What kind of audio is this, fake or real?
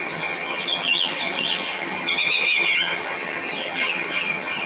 fake